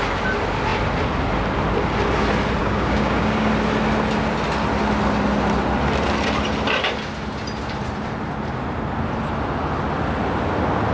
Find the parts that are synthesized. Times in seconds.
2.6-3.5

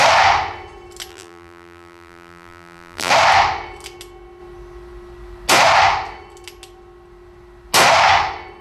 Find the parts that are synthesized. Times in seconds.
1.1-3.1

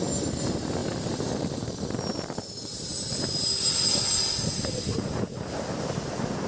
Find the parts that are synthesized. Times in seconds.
none

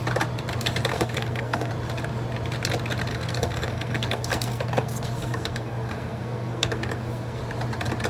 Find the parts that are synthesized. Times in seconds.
0.9-1.7; 3.1-7.4

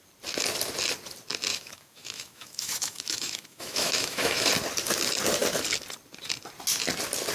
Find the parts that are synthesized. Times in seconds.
1.5-4.5